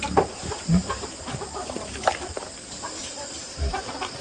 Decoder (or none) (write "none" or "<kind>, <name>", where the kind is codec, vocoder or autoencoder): vocoder, BigVGAN v2